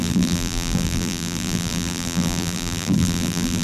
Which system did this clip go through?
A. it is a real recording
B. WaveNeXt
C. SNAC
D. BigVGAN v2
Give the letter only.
D